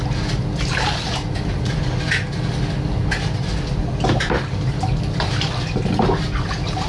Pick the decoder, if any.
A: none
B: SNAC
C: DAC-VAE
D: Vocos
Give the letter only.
A